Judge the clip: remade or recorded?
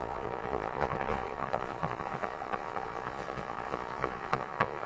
remade